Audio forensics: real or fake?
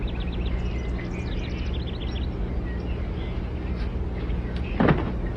real